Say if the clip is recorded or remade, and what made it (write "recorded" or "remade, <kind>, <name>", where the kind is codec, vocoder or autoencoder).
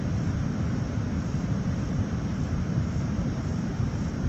remade, vocoder, BigVGAN v2